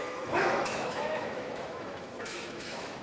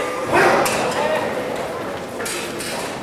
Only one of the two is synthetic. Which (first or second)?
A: first